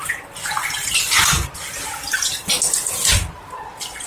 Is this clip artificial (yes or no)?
yes